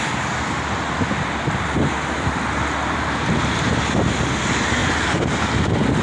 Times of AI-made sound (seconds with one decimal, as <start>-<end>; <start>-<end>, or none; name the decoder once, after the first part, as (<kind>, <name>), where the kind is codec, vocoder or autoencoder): none